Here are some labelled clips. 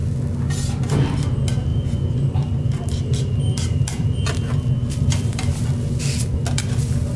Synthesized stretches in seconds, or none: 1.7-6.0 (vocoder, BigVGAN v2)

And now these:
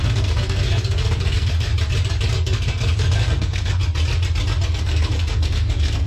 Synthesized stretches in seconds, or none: 0.0-1.7 (codec, SNAC); 2.3-3.8; 4.8-6.1

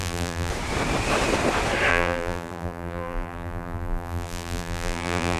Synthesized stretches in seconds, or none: 0.0-0.5 (vocoder, BigVGAN v2); 1.9-5.4

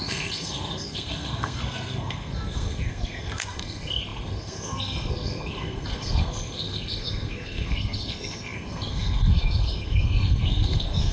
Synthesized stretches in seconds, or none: 0.0-11.1 (codec, SNAC)

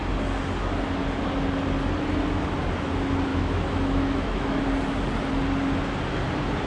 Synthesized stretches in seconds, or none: 3.3-4.6 (autoencoder, DAC-VAE)

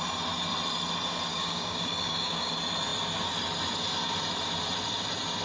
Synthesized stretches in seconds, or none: 1.3-2.5 (codec, DAC)

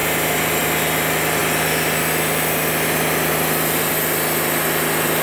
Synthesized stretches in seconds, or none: none

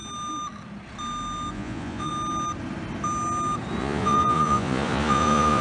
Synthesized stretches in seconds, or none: 1.5-2.1 (vocoder, Vocos); 3.8-5.6